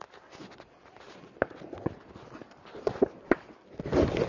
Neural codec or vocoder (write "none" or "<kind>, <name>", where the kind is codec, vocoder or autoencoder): none